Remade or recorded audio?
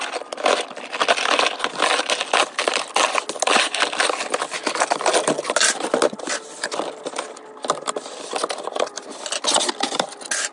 recorded